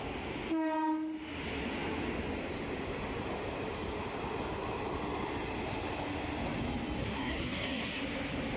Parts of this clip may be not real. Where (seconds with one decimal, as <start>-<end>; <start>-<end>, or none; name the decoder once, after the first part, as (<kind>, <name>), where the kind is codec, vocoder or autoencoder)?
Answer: 7.0-8.0 (codec, SNAC)